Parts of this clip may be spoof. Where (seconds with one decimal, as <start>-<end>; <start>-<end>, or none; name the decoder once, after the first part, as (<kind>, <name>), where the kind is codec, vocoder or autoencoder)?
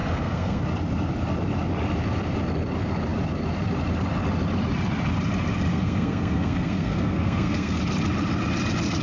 0.0-0.6 (codec, SNAC); 5.7-7.8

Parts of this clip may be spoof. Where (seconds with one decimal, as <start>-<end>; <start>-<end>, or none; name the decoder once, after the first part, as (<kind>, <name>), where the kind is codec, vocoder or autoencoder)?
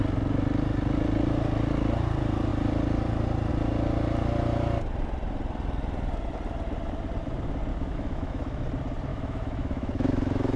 7.7-8.6 (autoencoder, DAC-VAE); 9.1-10.6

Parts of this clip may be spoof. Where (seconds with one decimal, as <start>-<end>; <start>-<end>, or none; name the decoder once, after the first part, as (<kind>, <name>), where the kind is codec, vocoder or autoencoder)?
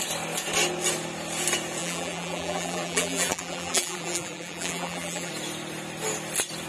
1.8-5.3 (vocoder, BigVGAN v2)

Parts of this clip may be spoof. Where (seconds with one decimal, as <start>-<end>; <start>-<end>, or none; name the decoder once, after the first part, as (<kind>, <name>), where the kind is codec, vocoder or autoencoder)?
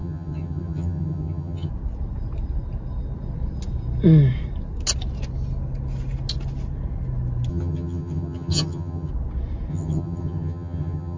0.0-1.7 (vocoder, HiFi-GAN); 7.5-9.1; 9.7-11.2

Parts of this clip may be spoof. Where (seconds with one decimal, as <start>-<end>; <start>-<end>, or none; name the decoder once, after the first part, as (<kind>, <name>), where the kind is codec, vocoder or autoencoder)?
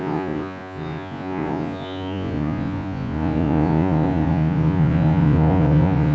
0.0-6.1 (vocoder, Vocos)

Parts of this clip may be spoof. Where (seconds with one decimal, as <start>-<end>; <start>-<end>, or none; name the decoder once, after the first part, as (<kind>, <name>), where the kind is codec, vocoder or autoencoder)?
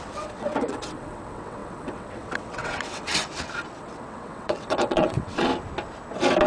0.0-3.1 (vocoder, WaveNeXt); 3.8-5.5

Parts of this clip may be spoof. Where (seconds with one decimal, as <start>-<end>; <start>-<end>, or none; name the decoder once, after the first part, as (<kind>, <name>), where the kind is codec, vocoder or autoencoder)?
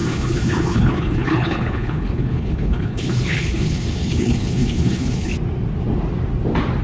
0.0-5.3 (codec, HILCodec)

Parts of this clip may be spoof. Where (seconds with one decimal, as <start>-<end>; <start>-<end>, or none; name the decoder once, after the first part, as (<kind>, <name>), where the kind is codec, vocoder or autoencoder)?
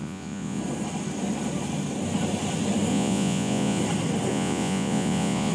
0.0-0.6 (vocoder, Vocos); 2.9-3.8; 4.3-5.5